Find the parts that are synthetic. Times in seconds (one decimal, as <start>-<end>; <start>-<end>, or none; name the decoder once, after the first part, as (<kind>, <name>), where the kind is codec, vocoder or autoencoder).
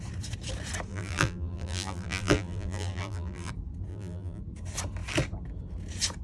0.9-3.5 (vocoder, BigVGAN v2); 3.9-4.4